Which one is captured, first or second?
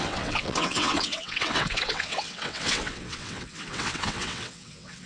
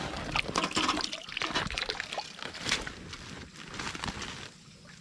second